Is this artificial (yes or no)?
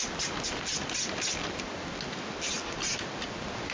no